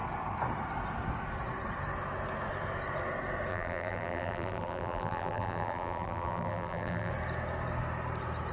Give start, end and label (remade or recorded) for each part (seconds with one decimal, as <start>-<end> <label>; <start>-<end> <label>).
0.0-3.5 recorded; 3.5-7.1 remade; 7.1-8.5 recorded